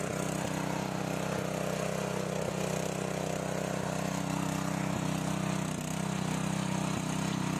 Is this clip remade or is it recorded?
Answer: recorded